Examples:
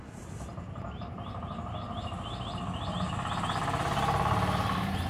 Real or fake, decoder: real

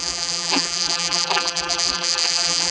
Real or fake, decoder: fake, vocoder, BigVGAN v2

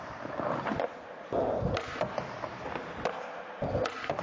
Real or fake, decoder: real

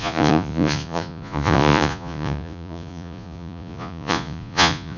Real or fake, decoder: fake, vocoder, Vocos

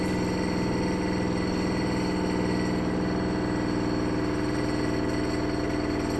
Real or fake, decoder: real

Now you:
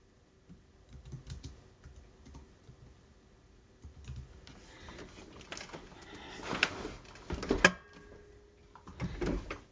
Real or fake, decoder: real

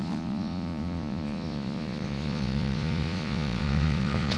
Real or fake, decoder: fake, vocoder, Vocos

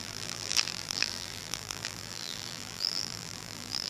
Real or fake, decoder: fake, vocoder, BigVGAN v2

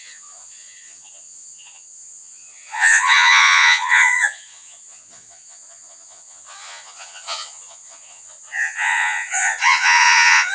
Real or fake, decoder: fake, vocoder, Vocos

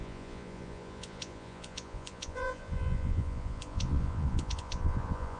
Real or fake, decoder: fake, vocoder, Vocos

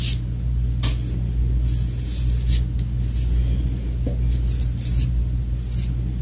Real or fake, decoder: real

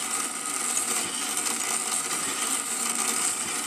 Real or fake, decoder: real